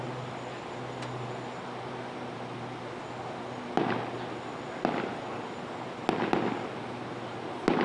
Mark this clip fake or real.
real